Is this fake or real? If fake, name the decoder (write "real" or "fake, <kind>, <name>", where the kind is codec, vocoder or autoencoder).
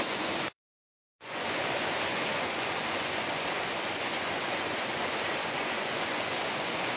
fake, vocoder, Vocos